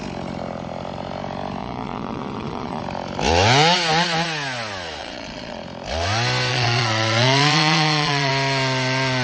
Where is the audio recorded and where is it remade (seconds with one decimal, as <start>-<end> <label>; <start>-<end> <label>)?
0.0-1.6 recorded; 1.6-2.8 remade; 2.8-5.0 recorded; 5.0-5.6 remade; 5.6-6.5 recorded; 6.5-8.3 remade; 8.3-9.2 recorded